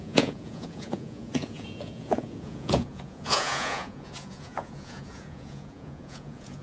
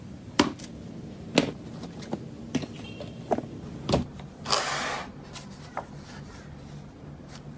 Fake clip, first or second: first